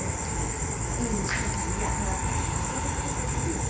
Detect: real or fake real